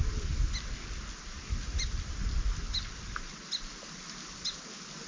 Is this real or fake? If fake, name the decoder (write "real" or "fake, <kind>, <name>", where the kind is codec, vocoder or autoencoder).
real